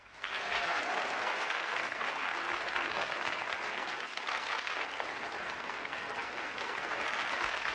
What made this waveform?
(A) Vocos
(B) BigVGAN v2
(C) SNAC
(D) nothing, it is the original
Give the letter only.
C